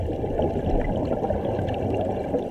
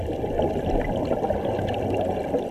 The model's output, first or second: first